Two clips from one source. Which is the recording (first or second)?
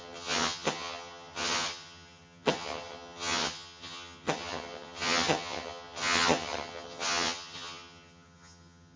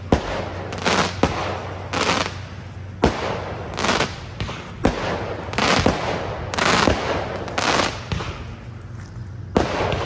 second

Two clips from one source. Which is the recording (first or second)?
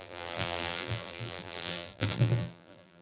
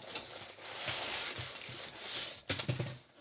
second